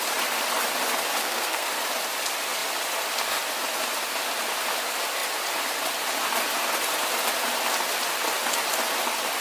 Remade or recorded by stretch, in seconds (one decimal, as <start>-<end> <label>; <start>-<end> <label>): 0.0-1.2 recorded; 1.2-1.7 remade; 1.7-9.4 recorded